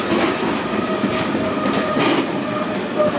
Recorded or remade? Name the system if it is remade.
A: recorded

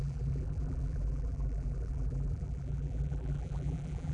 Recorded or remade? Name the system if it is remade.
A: remade, vocoder, BigVGAN v2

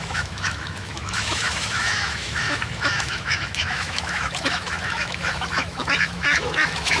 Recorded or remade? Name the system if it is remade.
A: remade, autoencoder, DAC-VAE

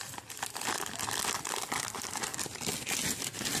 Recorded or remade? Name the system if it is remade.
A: recorded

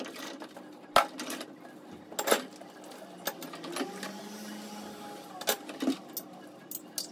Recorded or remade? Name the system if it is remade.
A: recorded